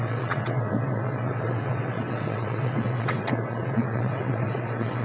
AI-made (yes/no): yes